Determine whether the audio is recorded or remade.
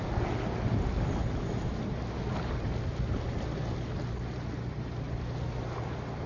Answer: recorded